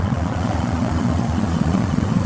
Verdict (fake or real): fake